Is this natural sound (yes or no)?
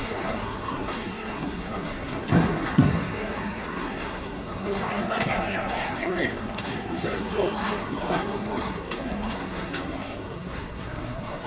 no